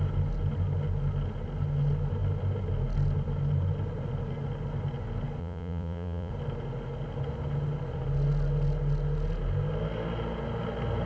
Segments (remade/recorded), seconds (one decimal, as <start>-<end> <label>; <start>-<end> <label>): 0.0-5.4 recorded; 5.4-6.3 remade; 6.3-11.1 recorded